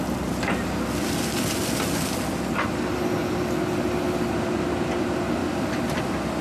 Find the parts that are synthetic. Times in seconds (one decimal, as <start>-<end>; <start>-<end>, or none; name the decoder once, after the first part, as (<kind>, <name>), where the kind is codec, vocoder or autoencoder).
none